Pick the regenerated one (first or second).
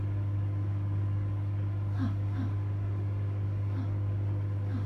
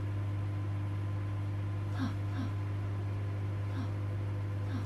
first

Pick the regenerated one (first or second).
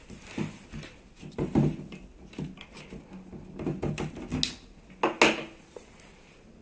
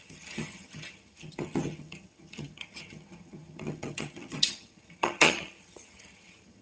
second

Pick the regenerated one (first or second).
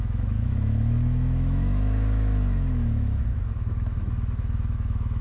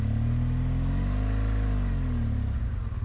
first